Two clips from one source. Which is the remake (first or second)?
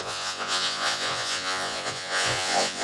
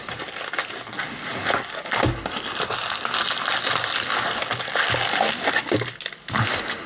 first